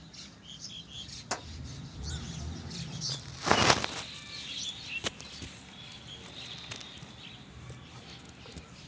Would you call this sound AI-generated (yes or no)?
no